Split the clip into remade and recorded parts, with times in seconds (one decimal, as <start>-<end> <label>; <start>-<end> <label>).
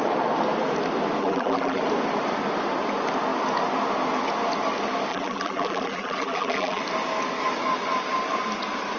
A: 0.0-1.2 recorded; 1.2-1.8 remade; 1.8-5.1 recorded; 5.1-6.8 remade; 6.8-9.0 recorded